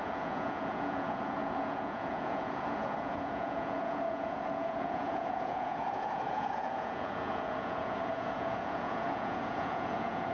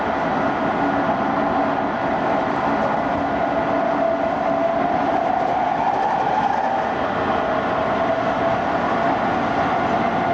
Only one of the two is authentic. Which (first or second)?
second